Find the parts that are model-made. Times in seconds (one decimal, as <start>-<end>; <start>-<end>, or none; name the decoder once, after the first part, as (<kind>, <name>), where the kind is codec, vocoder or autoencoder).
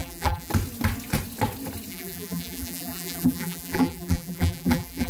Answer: 0.0-0.5 (vocoder, BigVGAN v2); 1.9-5.1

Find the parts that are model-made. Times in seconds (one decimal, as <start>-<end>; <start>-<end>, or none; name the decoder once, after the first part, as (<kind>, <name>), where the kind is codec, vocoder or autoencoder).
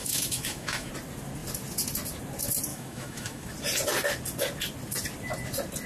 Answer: 0.0-0.9 (autoencoder, DAC-VAE); 2.7-3.5